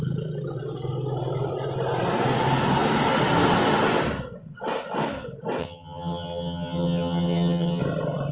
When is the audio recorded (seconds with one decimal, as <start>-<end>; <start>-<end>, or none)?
0.0-5.6; 7.8-8.3

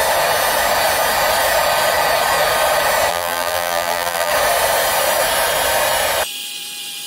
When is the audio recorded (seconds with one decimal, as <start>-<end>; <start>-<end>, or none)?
0.0-3.1; 4.3-7.1

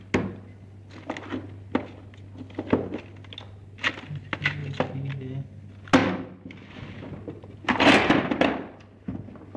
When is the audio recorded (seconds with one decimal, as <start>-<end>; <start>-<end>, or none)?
0.0-9.6

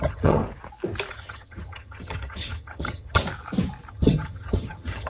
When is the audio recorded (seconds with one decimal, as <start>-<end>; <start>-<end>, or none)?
0.4-1.1; 3.2-3.9

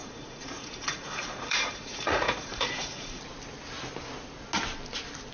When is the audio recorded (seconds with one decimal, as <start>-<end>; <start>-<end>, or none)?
3.2-5.3